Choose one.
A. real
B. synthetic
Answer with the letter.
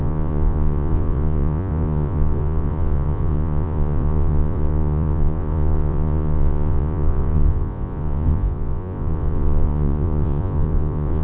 B